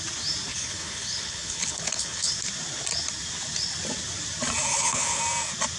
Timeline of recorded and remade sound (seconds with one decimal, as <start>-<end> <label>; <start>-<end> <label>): 0.0-0.5 recorded; 0.5-2.4 remade; 2.4-4.7 recorded; 4.7-5.2 remade; 5.2-5.8 recorded